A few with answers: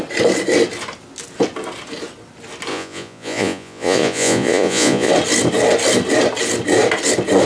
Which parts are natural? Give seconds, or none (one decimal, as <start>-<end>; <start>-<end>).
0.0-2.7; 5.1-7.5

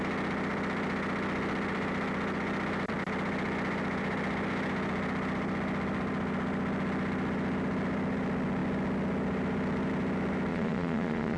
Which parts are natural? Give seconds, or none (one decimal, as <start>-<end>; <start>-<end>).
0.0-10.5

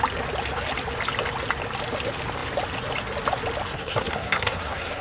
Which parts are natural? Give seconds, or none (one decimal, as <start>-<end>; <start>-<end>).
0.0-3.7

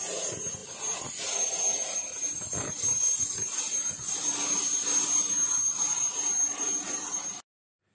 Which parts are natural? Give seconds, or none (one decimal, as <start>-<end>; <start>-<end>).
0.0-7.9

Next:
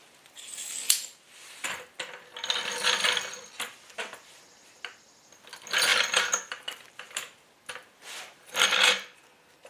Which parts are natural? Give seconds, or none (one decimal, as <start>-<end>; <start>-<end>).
0.0-9.7